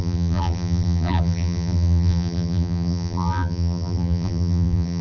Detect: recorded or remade remade